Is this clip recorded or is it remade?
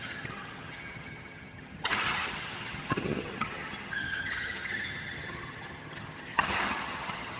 remade